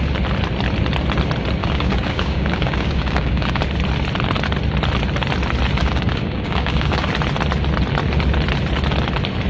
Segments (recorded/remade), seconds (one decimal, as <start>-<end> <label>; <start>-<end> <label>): 0.0-1.6 recorded; 1.6-3.6 remade; 3.6-5.8 recorded; 5.8-7.1 remade; 7.1-9.5 recorded